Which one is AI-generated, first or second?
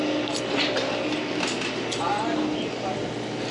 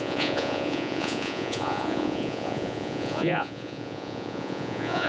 second